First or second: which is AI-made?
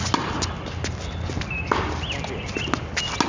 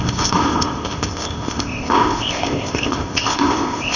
second